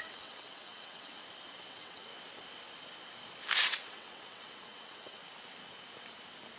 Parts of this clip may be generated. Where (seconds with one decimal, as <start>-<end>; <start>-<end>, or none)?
0.0-1.2; 1.7-2.1; 3.6-5.2